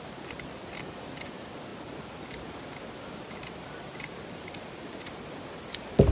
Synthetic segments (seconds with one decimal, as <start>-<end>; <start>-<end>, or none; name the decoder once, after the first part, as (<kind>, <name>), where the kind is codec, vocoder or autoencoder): none

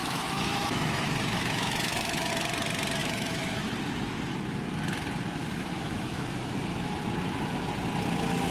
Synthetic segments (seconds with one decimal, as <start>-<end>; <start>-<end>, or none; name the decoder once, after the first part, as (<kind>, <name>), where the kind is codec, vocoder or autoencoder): 0.0-2.3 (autoencoder, DAC-VAE); 3.0-3.7; 5.4-7.0

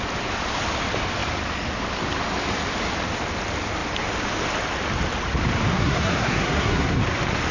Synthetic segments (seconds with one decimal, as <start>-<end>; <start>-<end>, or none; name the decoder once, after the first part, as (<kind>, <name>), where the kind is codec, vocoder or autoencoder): 5.7-7.0 (codec, SNAC)

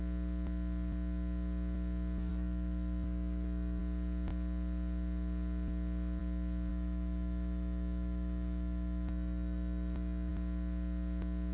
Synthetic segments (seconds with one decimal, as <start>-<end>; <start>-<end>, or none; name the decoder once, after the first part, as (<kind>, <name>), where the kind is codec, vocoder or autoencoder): 2.3-3.8 (autoencoder, DAC-VAE); 6.7-10.3

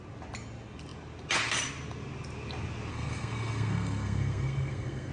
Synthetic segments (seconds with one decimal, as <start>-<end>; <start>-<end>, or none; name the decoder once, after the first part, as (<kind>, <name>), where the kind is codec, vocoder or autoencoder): 2.9-5.1 (codec, SNAC)

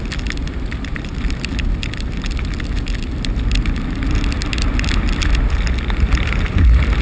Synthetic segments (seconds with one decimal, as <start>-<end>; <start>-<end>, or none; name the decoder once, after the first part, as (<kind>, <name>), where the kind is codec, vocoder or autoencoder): none

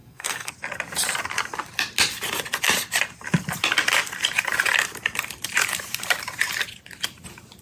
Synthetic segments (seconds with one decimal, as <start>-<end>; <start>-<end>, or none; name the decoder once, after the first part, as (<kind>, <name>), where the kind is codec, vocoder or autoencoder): 0.0-0.5 (codec, SNAC)

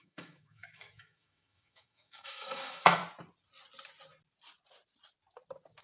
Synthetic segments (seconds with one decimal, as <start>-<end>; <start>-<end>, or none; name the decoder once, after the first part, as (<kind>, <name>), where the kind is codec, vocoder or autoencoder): 0.0-3.0 (autoencoder, DAC-VAE)